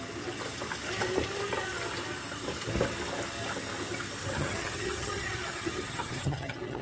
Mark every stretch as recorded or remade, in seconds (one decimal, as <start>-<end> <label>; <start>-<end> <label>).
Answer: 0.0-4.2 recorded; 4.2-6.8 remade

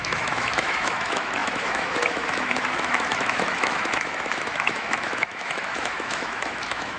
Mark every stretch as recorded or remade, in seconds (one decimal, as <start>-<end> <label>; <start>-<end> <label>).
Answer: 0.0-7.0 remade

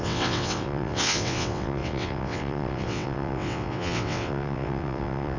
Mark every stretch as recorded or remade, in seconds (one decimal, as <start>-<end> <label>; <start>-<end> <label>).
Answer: 0.0-5.4 remade

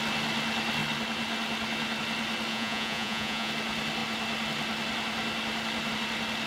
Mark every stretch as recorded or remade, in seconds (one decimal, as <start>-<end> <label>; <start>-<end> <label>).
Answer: 0.0-2.5 recorded; 2.5-3.5 remade; 3.5-6.5 recorded

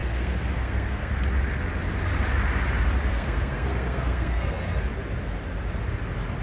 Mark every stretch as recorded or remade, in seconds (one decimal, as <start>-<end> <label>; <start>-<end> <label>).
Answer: 0.0-1.1 remade; 1.1-3.1 recorded; 3.1-4.9 remade; 4.9-6.4 recorded

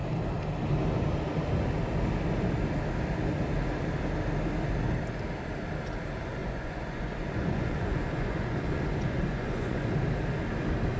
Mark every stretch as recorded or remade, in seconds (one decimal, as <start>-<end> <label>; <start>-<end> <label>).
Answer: 0.0-6.4 recorded; 6.4-9.9 remade; 9.9-11.0 recorded